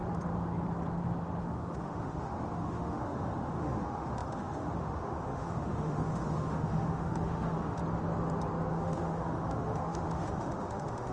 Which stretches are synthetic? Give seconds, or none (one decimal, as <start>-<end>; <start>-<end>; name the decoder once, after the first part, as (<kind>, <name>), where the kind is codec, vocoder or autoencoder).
1.4-7.8 (autoencoder, DAC-VAE); 8.7-11.1